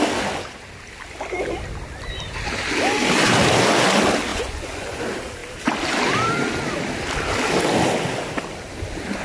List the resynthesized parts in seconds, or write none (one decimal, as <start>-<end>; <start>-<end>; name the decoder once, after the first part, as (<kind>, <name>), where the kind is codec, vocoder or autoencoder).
4.3-5.0 (vocoder, Vocos)